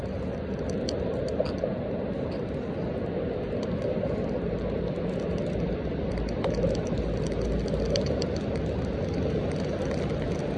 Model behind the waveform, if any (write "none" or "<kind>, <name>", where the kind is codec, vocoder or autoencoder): none